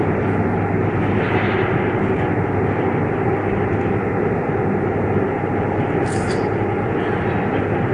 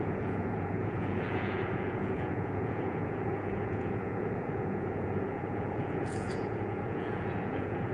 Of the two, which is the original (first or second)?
first